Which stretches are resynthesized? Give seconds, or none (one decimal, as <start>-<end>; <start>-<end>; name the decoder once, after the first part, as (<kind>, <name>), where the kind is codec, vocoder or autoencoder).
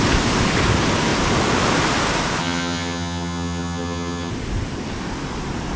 2.4-4.3 (vocoder, HiFi-GAN)